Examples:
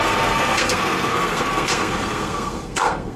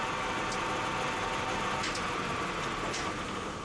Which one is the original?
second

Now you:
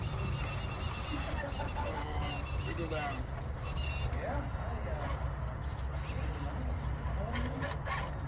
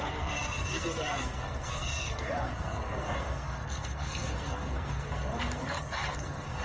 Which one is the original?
first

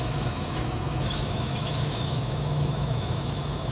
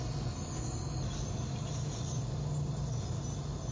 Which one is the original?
second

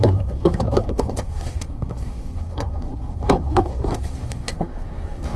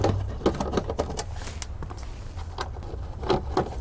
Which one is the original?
second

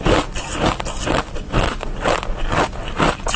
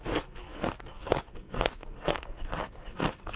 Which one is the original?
first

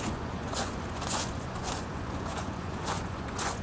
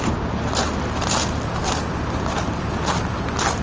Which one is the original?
second